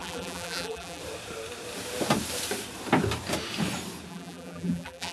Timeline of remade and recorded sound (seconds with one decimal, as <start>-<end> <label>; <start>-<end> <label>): 0.0-1.0 remade; 1.0-4.1 recorded; 4.1-5.1 remade